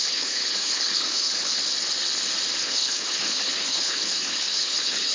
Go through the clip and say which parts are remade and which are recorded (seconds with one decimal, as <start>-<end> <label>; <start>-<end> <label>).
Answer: 0.0-1.6 remade; 1.6-2.6 recorded; 2.6-5.1 remade